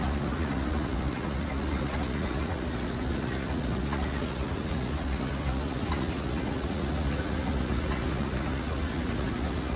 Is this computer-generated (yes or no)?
yes